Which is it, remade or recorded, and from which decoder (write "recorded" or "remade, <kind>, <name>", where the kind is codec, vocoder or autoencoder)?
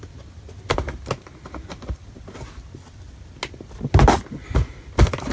recorded